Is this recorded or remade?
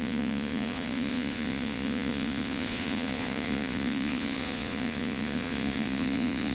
remade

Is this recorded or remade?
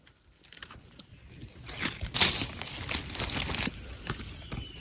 recorded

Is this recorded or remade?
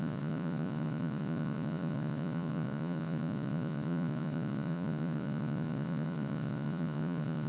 remade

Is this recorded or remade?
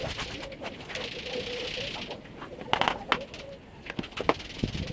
recorded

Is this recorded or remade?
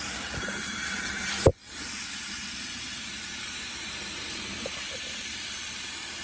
remade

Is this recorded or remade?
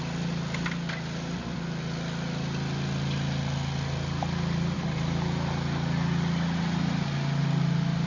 recorded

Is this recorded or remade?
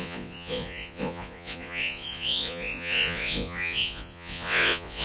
remade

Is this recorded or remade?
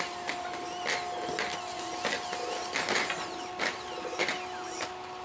recorded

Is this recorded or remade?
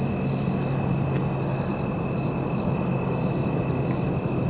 recorded